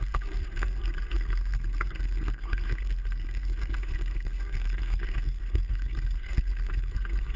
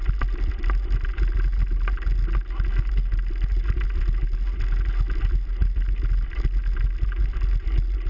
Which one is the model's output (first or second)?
first